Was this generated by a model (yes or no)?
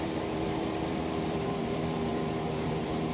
yes